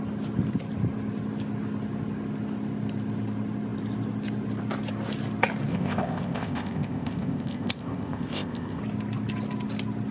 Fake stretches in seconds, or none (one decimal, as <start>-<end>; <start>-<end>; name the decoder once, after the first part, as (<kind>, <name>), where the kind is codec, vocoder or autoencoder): 5.7-8.8 (codec, ZipCodec)